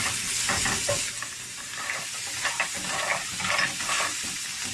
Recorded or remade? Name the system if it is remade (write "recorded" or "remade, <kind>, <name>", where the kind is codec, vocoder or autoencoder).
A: recorded